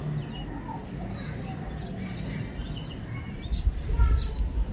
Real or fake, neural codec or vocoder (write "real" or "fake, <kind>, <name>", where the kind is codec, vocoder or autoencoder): real